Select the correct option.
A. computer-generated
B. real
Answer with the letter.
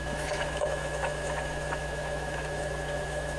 A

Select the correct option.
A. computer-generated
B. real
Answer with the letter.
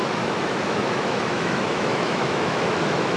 A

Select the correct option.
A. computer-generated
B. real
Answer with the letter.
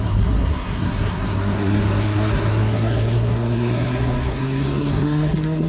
A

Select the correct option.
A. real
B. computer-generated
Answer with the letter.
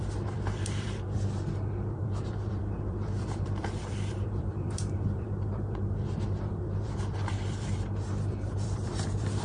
B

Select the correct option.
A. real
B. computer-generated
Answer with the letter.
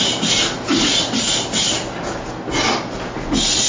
A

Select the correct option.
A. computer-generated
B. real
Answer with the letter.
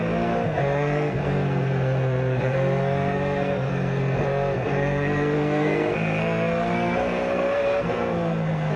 A